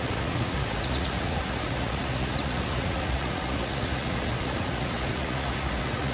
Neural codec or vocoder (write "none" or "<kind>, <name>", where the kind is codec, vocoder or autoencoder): vocoder, Vocos